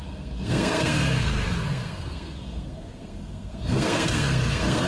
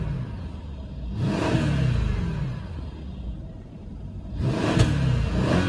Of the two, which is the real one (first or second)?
second